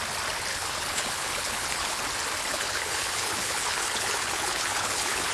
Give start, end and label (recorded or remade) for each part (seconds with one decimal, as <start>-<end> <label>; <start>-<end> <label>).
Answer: 0.0-0.5 recorded; 0.5-2.0 remade; 2.0-2.5 recorded; 2.5-5.3 remade